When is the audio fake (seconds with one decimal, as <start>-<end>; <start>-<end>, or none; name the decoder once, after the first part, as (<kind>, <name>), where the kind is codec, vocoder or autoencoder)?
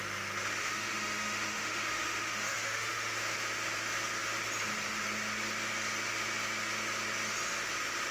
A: 0.6-3.2 (autoencoder, DAC-VAE)